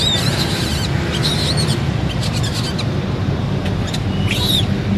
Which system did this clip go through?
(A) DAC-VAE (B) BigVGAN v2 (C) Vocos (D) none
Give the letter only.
D